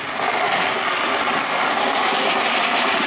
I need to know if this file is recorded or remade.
recorded